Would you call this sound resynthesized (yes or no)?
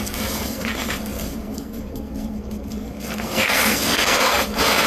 yes